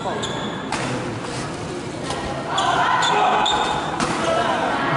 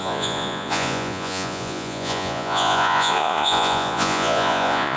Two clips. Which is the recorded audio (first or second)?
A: first